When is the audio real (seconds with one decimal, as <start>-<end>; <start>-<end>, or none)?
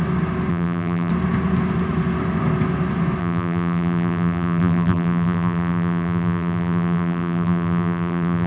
0.0-0.5; 1.1-3.2